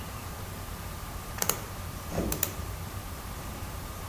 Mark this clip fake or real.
fake